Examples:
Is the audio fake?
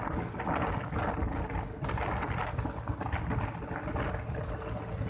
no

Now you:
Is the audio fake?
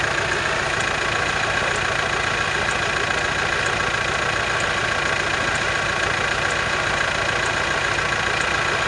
no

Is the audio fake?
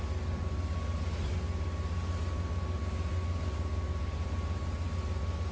no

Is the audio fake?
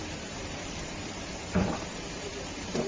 yes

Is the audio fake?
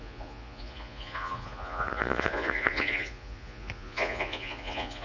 yes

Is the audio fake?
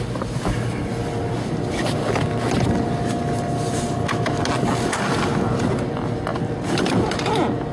no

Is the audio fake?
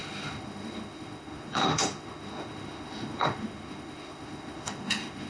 yes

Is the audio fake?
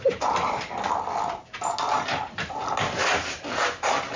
no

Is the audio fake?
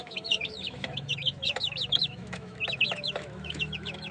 yes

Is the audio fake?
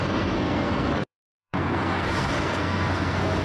yes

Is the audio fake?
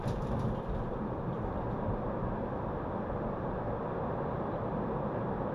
no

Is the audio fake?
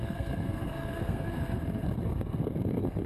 yes